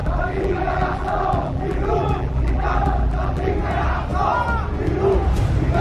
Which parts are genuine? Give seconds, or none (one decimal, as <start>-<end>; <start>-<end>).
3.5-5.8